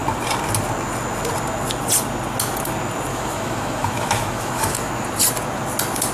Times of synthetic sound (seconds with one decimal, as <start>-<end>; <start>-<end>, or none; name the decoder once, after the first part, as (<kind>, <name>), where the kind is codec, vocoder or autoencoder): 3.1-4.9 (autoencoder, DAC-VAE)

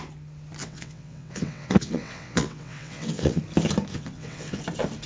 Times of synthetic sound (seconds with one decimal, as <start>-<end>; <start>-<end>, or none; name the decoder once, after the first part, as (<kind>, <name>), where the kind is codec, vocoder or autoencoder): 0.6-3.4 (vocoder, WaveNeXt); 3.9-4.6

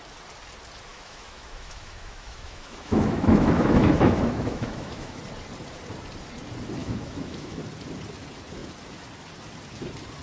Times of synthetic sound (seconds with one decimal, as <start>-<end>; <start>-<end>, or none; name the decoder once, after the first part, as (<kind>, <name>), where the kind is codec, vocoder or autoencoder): 0.9-5.2 (autoencoder, DAC-VAE); 6.8-7.6

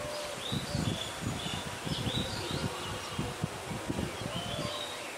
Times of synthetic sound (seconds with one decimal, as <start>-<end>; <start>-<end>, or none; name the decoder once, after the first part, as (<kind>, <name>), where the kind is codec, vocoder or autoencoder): none

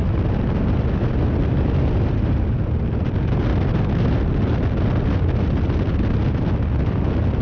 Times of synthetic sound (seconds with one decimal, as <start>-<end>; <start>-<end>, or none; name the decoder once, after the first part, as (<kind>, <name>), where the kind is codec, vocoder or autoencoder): none

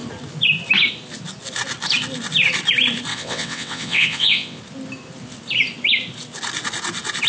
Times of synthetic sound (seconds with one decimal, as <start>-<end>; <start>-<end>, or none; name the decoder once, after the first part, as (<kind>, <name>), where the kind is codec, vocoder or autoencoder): 3.1-4.6 (vocoder, WaveNeXt)

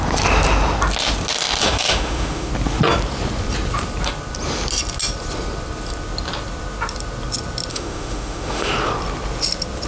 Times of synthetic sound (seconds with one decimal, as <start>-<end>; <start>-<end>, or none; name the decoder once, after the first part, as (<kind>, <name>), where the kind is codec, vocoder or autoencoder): 1.6-2.5 (autoencoder, DAC-VAE); 7.7-8.7

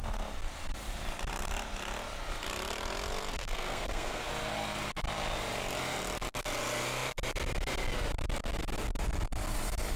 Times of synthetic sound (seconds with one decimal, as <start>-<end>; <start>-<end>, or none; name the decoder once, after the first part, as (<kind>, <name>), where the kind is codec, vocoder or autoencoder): 3.3-4.3 (codec, SNAC)